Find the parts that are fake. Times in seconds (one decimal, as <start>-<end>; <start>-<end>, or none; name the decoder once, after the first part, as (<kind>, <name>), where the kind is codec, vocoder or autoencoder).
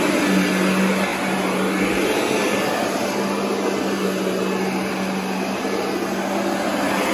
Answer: none